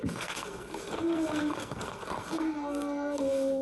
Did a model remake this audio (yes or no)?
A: yes